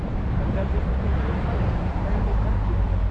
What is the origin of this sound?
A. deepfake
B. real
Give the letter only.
A